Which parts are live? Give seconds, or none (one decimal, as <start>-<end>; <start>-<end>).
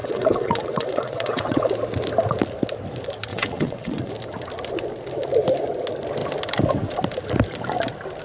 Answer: 1.7-3.3; 4.1-8.2